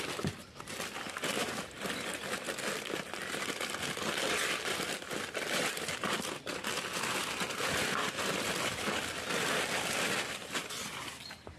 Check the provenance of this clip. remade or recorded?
remade